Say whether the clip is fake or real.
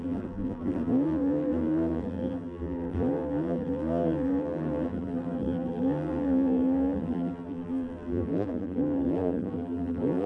fake